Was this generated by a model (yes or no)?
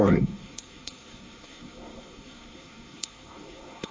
yes